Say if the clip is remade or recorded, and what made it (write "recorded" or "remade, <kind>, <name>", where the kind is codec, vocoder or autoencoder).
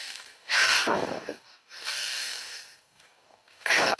remade, codec, DAC